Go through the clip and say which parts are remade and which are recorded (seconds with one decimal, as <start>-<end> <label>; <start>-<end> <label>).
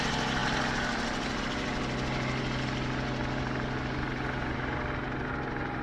0.0-5.8 recorded